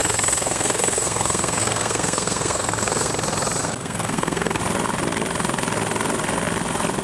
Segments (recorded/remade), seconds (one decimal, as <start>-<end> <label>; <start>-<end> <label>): 0.0-3.1 remade; 3.1-3.6 recorded; 3.6-4.6 remade; 4.6-7.0 recorded